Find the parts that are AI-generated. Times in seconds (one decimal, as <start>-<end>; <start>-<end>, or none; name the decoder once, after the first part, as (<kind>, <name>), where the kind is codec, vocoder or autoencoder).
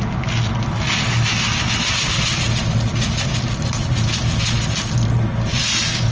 none